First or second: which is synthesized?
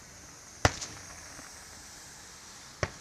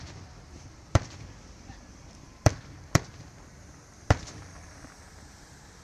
second